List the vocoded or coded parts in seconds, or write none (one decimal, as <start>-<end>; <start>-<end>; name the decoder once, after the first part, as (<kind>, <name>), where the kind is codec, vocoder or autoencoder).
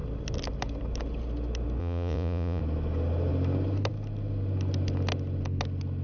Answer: 1.8-2.6 (vocoder, Vocos)